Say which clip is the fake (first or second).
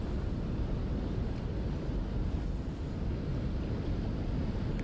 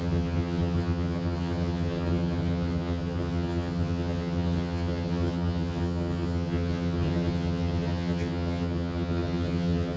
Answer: second